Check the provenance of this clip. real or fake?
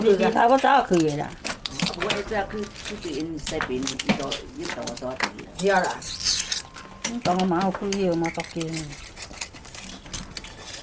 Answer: real